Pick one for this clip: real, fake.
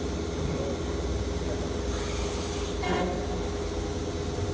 real